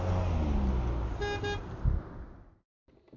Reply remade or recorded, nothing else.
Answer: recorded